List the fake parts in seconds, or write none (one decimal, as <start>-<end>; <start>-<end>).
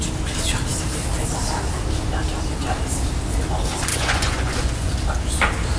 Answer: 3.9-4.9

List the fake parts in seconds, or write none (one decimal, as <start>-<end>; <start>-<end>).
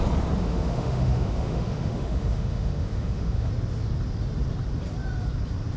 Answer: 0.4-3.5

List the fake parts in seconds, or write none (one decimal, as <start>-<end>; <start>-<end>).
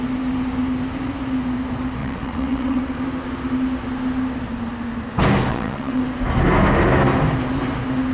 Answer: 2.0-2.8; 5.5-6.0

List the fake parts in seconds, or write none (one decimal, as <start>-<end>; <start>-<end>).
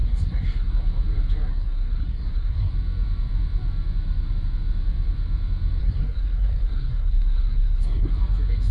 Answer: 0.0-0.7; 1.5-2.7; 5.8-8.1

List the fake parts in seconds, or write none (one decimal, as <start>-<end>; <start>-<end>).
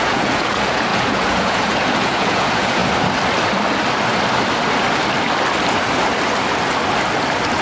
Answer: 0.0-2.8